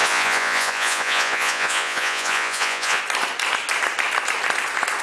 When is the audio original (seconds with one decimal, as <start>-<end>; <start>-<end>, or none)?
3.0-5.0